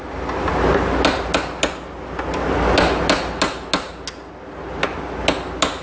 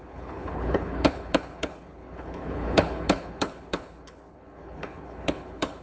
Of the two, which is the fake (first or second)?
second